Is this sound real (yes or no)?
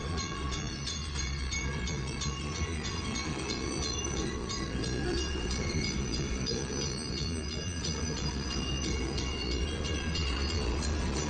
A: no